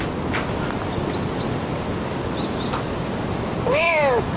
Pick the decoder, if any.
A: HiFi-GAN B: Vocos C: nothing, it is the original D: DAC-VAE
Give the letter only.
C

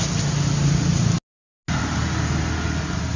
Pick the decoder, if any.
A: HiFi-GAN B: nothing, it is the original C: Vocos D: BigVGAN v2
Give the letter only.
B